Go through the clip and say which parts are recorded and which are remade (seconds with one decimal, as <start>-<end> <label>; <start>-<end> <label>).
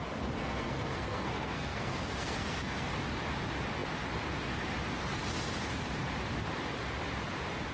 0.0-0.4 recorded; 0.4-2.9 remade; 2.9-7.7 recorded